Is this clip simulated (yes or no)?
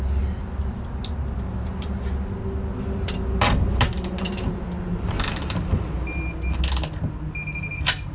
no